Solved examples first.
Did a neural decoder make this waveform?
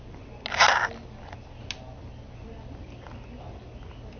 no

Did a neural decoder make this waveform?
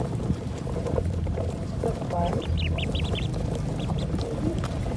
yes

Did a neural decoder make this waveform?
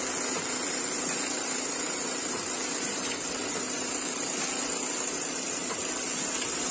no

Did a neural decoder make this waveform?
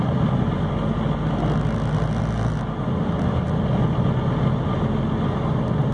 no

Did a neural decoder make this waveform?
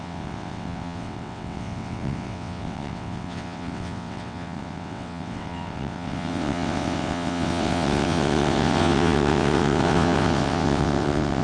yes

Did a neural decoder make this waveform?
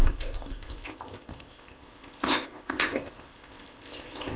yes